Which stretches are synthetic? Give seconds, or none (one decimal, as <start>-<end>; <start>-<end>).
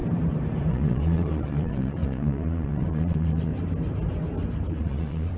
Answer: 0.7-3.5; 4.7-5.4